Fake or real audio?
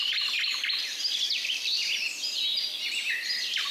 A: real